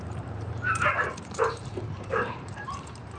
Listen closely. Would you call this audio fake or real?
fake